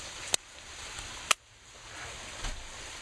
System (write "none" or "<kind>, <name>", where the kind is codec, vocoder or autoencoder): none